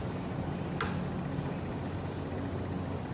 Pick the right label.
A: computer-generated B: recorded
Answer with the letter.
B